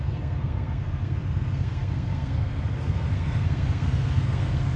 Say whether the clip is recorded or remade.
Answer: remade